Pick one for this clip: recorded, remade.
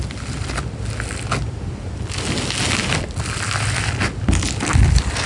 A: recorded